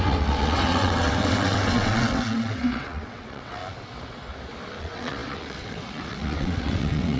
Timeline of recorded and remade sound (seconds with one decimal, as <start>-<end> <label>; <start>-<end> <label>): 0.0-3.6 remade; 3.6-4.8 recorded; 4.8-7.2 remade